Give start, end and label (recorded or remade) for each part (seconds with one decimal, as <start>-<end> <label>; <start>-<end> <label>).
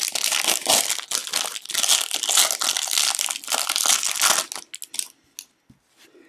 0.0-6.3 recorded